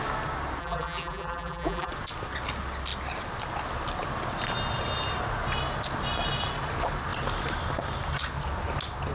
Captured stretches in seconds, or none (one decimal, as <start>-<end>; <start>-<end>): 0.0-0.6; 1.9-9.1